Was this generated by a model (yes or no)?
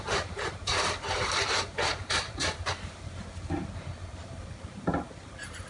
yes